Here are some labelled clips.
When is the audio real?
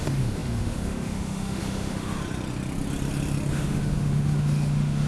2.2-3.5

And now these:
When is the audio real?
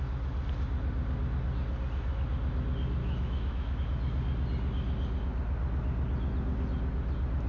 0.0-3.0; 3.8-7.5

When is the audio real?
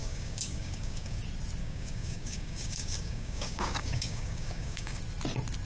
1.2-1.6; 5.0-5.7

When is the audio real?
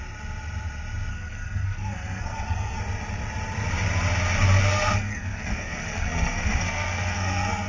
0.0-1.1; 2.8-4.6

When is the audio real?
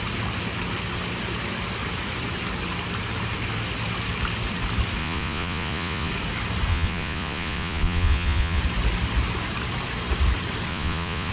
0.0-5.0; 6.1-6.7; 8.6-10.7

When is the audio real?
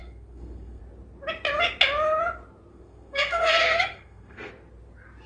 0.8-2.7; 4.5-5.3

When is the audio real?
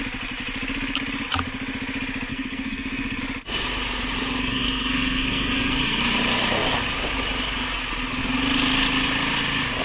0.0-2.3; 3.2-4.4; 6.0-9.8